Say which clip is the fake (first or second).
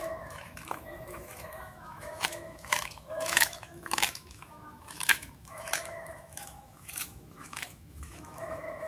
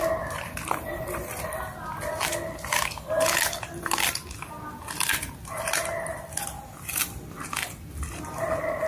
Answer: first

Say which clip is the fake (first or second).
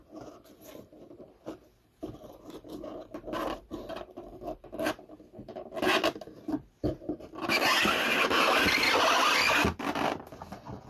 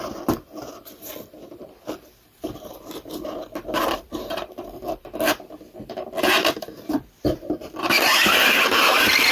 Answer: second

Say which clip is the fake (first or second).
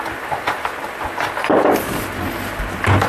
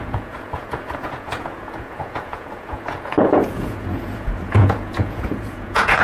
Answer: second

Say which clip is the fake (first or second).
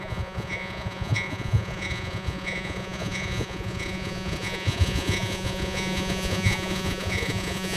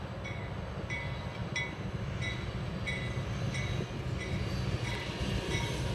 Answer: first